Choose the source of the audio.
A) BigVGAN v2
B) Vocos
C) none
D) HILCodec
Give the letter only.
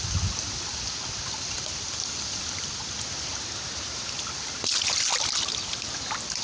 C